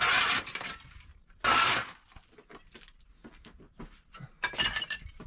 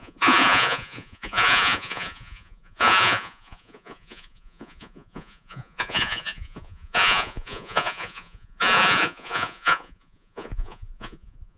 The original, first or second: first